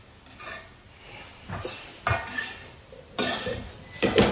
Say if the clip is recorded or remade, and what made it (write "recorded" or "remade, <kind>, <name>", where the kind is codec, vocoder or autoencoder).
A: recorded